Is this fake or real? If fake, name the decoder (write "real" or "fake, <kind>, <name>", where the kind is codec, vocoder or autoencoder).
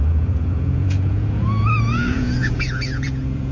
fake, vocoder, Vocos